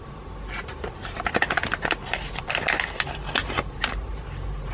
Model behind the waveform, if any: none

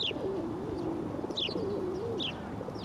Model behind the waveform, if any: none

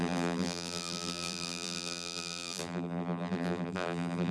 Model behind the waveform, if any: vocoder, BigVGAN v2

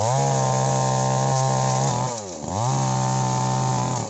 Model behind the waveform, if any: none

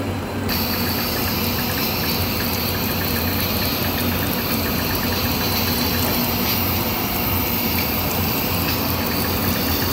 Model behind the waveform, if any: none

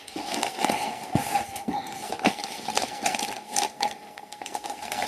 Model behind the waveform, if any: codec, SNAC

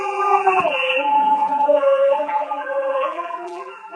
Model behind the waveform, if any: vocoder, BigVGAN v2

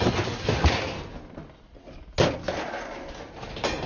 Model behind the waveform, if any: none